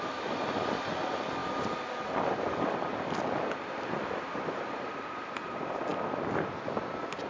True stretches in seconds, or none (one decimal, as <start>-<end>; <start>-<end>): 0.0-1.4; 2.1-7.3